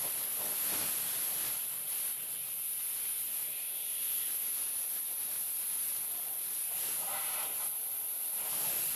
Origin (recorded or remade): recorded